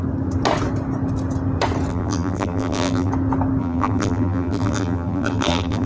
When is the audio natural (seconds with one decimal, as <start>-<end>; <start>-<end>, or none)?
0.0-1.9; 3.1-3.6